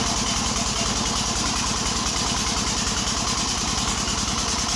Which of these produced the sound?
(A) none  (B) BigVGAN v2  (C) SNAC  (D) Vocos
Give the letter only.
A